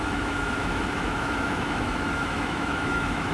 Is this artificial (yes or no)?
yes